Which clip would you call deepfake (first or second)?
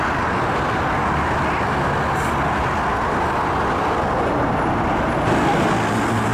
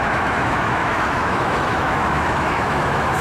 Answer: second